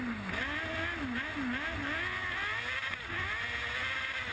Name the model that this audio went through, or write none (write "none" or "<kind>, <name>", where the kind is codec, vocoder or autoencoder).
none